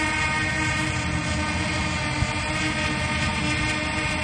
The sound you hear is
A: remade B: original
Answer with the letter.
B